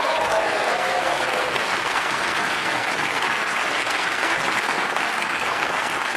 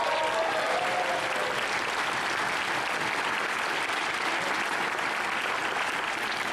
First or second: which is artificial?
first